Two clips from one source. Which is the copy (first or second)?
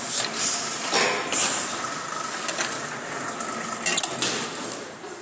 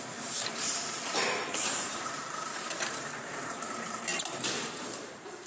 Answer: second